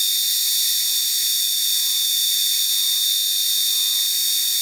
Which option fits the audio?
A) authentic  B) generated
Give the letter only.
A